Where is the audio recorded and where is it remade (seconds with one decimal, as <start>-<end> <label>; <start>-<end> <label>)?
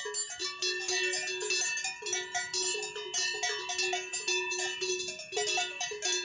0.0-6.2 recorded